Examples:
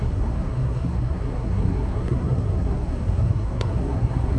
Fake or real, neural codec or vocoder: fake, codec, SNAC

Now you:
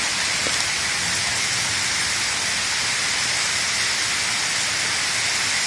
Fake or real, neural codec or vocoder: real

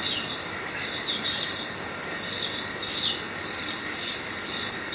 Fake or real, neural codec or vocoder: real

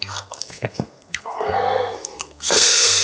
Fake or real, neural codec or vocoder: fake, codec, SNAC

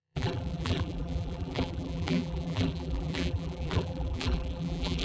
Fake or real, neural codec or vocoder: fake, vocoder, BigVGAN v2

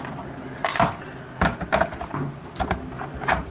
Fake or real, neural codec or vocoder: real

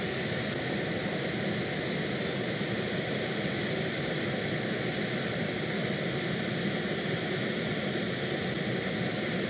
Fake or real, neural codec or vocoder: real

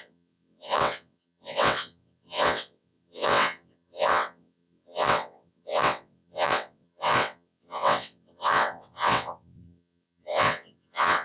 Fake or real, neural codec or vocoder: fake, vocoder, WaveNeXt